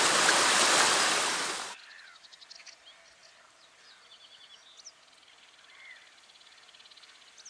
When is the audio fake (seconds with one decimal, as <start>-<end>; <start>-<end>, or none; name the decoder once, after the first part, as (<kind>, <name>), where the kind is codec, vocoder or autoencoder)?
none